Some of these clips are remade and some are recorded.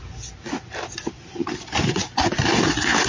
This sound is recorded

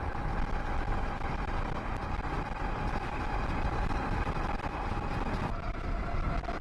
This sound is recorded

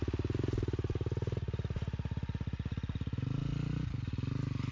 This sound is recorded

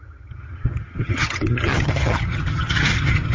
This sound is remade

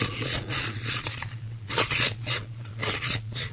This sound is remade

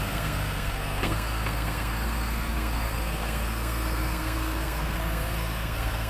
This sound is remade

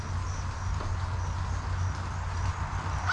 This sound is recorded